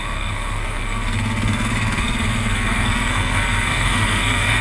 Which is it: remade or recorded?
remade